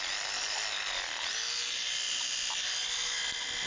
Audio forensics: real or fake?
real